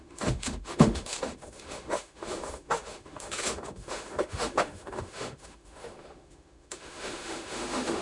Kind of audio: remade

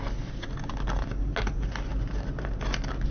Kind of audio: recorded